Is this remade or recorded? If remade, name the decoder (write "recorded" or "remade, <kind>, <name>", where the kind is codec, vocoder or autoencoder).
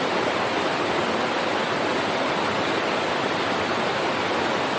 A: recorded